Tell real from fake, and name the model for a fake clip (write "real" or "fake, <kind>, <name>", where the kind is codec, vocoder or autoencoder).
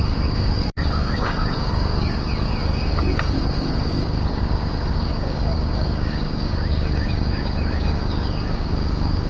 fake, codec, DAC